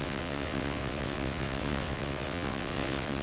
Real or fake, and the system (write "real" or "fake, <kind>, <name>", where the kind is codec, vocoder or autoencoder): fake, vocoder, WaveNeXt